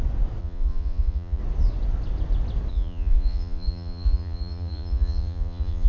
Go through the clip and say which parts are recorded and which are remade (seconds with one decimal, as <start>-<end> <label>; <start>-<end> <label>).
0.0-0.4 recorded; 0.4-1.4 remade; 1.4-2.7 recorded; 2.7-5.9 remade